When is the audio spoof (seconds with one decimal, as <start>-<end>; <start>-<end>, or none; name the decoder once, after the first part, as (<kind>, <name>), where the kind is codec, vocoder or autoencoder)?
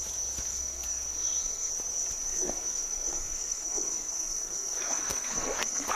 0.5-1.7 (codec, SNAC); 2.2-5.9